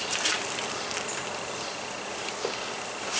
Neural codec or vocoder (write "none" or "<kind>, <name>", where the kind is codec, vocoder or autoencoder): none